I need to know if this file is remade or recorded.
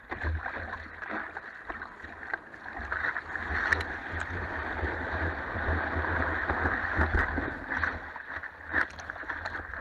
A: recorded